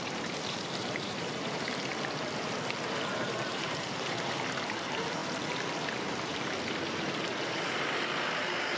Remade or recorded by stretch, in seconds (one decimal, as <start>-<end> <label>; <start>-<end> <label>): 0.0-1.9 remade; 1.9-3.1 recorded; 3.1-5.2 remade; 5.2-8.8 recorded